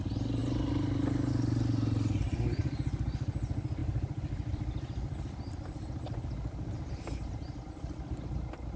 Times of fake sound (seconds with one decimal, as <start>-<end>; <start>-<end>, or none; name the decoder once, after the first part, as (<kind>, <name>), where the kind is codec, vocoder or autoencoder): none